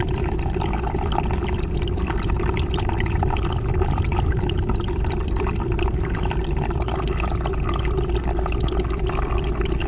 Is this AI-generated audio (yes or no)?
no